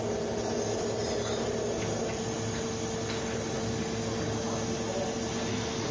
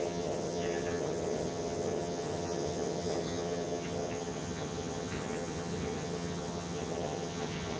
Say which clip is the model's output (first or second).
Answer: second